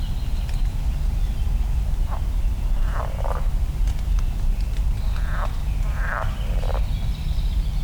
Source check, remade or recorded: recorded